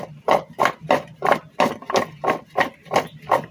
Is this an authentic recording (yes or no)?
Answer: yes